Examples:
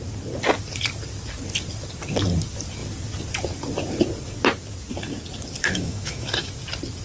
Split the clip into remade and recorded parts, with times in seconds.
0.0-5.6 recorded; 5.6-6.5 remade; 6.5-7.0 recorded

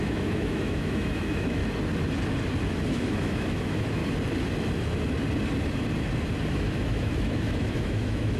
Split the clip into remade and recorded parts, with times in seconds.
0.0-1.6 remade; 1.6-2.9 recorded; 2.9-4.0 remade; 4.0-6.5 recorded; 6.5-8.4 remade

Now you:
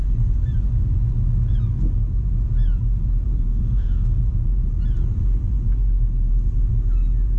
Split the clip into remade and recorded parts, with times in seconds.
0.0-3.5 recorded; 3.5-4.2 remade; 4.2-7.4 recorded

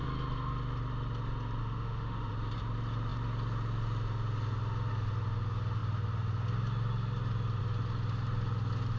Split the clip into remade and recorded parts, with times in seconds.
0.0-1.6 recorded; 1.6-2.3 remade; 2.3-9.0 recorded

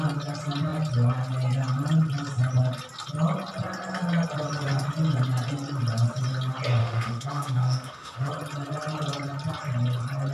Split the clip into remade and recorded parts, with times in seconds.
0.0-6.8 recorded; 6.8-8.3 remade; 8.3-10.3 recorded